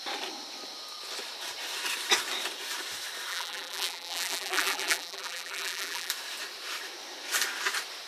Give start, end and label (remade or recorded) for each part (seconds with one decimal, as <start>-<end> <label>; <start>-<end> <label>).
0.0-3.3 recorded; 3.3-6.1 remade; 6.1-8.1 recorded